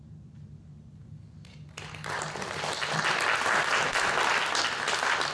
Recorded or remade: recorded